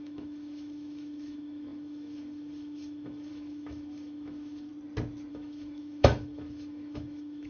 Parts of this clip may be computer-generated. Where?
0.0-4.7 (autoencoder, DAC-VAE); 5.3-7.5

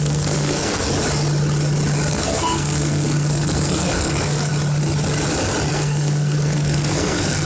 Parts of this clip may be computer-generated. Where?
0.0-0.9 (codec, SNAC); 2.1-4.5; 5.7-7.4

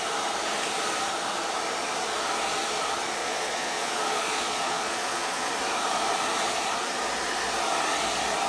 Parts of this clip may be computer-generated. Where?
3.2-5.5 (vocoder, Vocos)

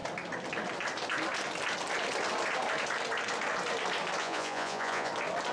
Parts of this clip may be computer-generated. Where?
4.2-5.1 (vocoder, Vocos)